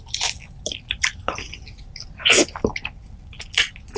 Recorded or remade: recorded